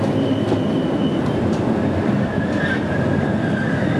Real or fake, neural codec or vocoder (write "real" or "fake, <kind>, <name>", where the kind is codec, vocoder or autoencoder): real